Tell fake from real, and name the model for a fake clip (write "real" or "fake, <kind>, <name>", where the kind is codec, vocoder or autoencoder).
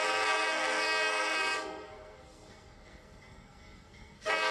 fake, codec, SNAC